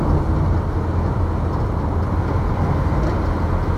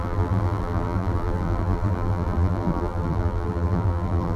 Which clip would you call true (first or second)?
first